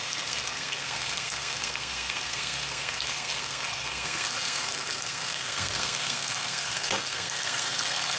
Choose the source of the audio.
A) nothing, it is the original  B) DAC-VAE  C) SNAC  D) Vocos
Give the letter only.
C